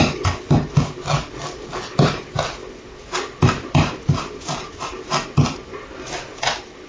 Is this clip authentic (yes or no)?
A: yes